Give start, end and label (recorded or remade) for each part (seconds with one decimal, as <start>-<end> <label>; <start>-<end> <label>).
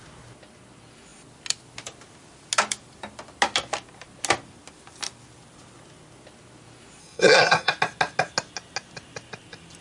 0.0-7.0 recorded; 7.0-7.7 remade; 7.7-9.8 recorded